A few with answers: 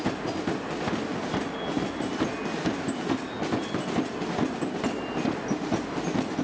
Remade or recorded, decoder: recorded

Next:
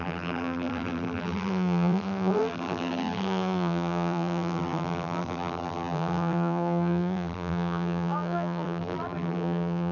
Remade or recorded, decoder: remade, vocoder, BigVGAN v2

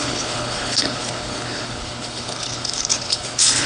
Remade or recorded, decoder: remade, codec, HILCodec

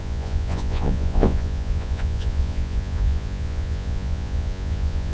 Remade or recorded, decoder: remade, vocoder, Vocos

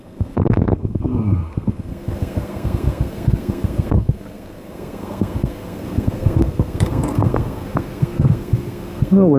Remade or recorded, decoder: remade, codec, SNAC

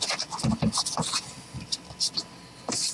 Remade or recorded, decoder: recorded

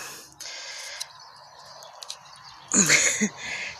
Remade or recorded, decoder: recorded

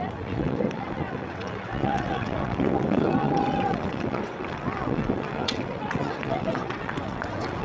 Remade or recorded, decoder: remade, vocoder, WaveNeXt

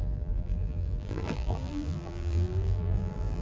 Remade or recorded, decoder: remade, vocoder, BigVGAN v2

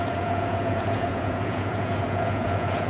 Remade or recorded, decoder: remade, vocoder, Vocos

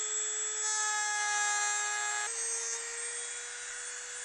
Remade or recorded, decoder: recorded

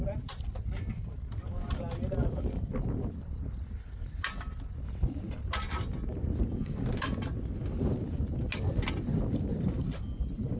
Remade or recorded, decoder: recorded